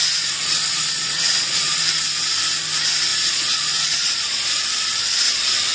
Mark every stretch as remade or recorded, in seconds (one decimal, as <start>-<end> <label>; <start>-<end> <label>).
0.0-0.7 recorded; 0.7-1.8 remade; 1.8-3.1 recorded; 3.1-4.5 remade; 4.5-5.7 recorded